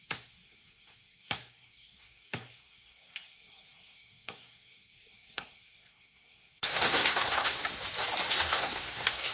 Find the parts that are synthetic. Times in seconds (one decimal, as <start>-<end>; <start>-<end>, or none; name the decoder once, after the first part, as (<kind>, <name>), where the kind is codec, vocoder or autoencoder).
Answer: 0.0-7.6 (codec, SNAC); 8.3-9.3